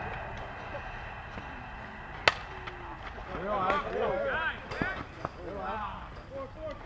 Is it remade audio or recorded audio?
recorded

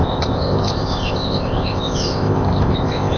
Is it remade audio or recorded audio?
remade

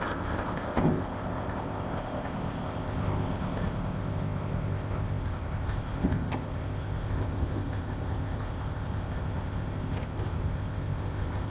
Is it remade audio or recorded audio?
remade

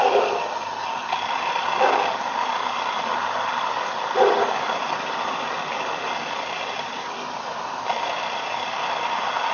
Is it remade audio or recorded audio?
recorded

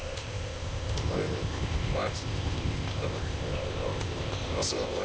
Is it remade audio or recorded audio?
remade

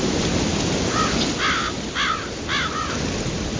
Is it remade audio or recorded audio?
recorded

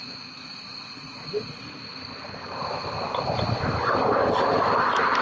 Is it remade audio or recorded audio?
recorded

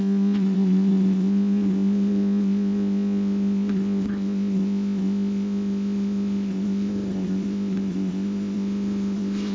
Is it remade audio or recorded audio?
remade